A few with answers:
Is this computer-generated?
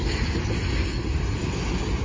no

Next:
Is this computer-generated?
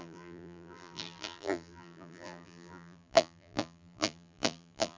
yes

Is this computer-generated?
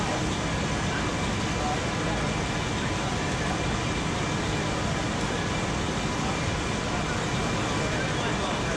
no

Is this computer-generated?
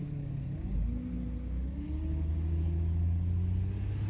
no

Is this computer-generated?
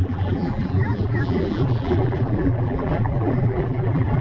yes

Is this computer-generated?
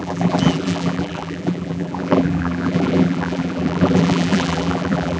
yes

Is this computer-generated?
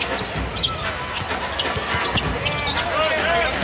no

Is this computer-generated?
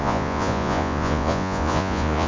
yes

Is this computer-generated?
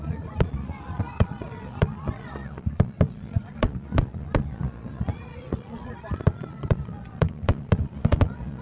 yes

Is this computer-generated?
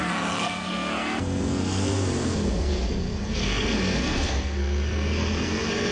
yes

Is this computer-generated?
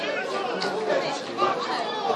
no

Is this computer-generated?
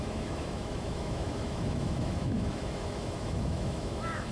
yes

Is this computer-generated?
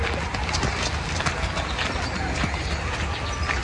no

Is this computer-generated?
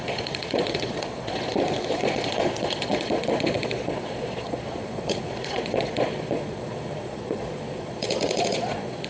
yes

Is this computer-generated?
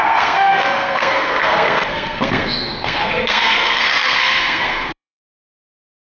yes